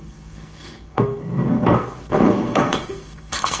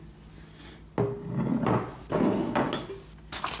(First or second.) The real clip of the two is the second